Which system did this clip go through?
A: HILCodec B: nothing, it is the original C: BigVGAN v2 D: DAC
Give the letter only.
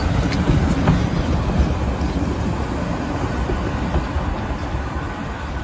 B